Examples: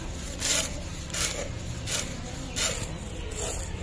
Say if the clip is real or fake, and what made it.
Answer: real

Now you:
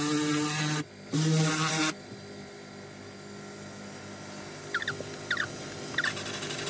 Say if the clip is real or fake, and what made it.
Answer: real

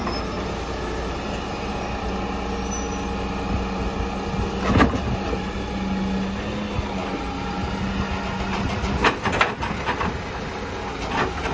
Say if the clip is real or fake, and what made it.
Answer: real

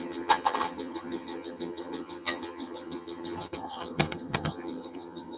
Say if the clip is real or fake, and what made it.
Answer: fake, vocoder, HiFi-GAN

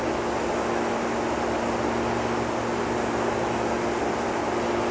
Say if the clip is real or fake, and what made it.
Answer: real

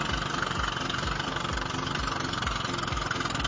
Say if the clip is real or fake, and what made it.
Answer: real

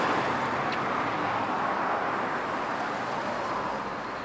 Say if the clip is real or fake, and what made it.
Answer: real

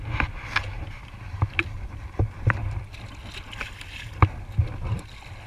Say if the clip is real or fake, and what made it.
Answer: real